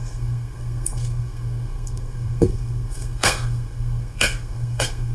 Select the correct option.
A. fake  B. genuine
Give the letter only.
A